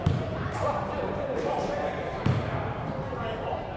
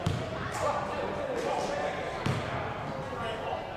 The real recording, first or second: second